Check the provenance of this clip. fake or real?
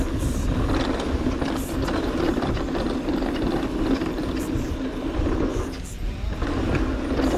real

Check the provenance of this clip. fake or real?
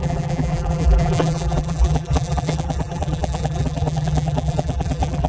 fake